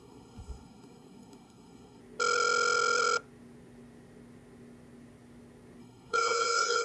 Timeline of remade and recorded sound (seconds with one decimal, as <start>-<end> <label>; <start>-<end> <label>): 0.0-2.0 remade; 2.0-5.8 recorded; 5.8-6.8 remade